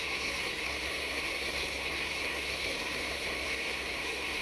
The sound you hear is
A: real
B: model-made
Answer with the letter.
B